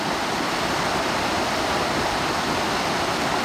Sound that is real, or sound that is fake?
real